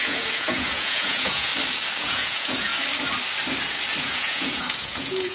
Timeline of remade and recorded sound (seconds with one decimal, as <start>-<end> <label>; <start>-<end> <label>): 0.0-1.5 remade; 1.5-2.0 recorded; 2.0-2.7 remade; 2.7-4.0 recorded; 4.0-5.3 remade